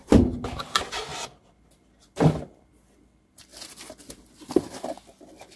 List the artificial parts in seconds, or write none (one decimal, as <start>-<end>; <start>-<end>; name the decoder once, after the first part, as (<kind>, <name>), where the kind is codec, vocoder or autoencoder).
1.1-2.7 (vocoder, BigVGAN v2)